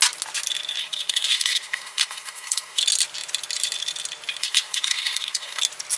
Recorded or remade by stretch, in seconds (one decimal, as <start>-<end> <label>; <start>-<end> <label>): 0.0-0.8 recorded; 0.8-2.8 remade; 2.8-4.4 recorded; 4.4-5.6 remade; 5.6-6.0 recorded